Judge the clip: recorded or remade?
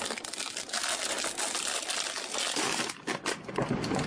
recorded